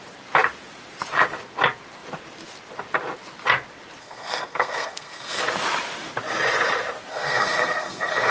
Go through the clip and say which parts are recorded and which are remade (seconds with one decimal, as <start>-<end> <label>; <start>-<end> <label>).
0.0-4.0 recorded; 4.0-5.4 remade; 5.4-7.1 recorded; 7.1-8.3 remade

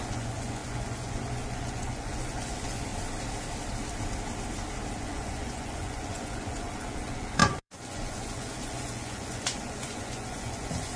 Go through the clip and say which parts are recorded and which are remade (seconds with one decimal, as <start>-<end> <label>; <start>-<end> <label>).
0.0-2.9 remade; 2.9-5.0 recorded; 5.0-11.0 remade

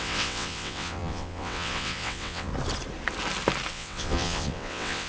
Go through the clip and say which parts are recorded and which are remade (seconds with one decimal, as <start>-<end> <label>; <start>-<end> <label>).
0.0-2.5 remade; 2.5-3.7 recorded; 3.7-5.1 remade

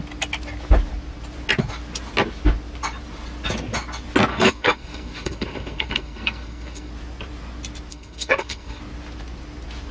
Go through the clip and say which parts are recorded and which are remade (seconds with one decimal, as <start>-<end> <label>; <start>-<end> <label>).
0.0-4.3 recorded; 4.3-6.9 remade; 6.9-7.9 recorded; 7.9-8.8 remade; 8.8-9.9 recorded